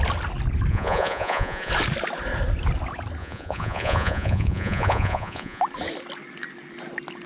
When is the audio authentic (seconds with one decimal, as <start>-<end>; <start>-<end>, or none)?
0.0-0.7; 1.7-3.2; 5.6-7.3